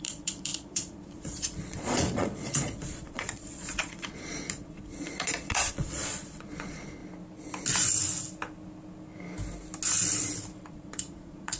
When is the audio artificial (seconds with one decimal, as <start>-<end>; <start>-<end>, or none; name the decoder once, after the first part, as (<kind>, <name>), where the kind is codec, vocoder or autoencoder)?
0.0-7.0 (vocoder, Vocos); 10.7-11.6